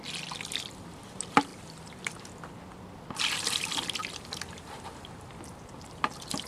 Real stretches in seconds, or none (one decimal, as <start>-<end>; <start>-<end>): 1.5-3.0; 4.0-5.2